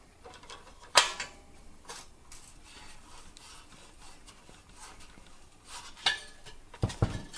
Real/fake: real